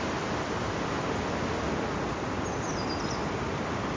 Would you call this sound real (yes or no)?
yes